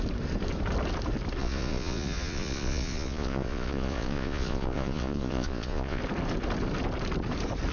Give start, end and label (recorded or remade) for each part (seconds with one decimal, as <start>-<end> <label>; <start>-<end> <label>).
0.0-1.4 recorded; 1.4-6.0 remade; 6.0-7.7 recorded